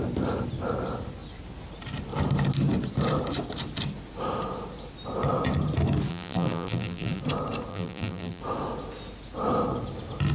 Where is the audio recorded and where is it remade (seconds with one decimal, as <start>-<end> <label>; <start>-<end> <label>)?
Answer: 0.0-6.1 recorded; 6.1-7.2 remade; 7.2-7.7 recorded; 7.7-8.4 remade; 8.4-10.3 recorded